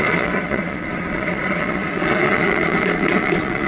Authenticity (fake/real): fake